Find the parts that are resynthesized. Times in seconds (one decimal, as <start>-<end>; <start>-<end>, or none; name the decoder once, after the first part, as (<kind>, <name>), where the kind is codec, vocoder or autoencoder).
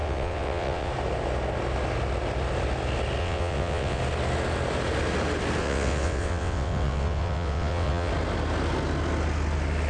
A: 0.0-0.9 (vocoder, WaveNeXt); 3.2-4.0; 5.6-8.1